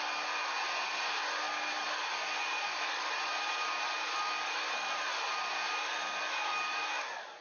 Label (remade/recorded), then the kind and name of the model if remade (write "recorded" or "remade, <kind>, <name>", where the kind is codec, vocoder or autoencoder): recorded